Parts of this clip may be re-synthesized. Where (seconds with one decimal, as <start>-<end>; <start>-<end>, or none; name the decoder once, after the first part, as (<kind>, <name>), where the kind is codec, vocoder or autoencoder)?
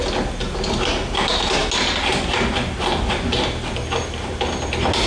none